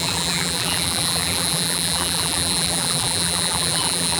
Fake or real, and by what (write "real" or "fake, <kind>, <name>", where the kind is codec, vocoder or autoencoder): fake, vocoder, BigVGAN v2